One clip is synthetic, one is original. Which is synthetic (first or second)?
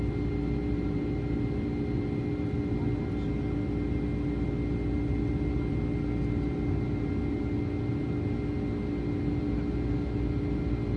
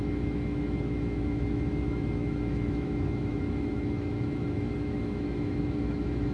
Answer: second